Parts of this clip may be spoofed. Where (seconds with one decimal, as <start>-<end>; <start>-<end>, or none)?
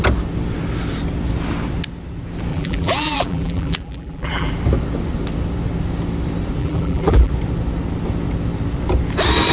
2.5-4.5; 6.6-7.3